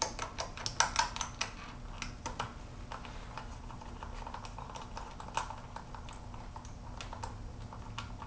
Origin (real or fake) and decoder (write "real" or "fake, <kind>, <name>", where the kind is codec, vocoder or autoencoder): real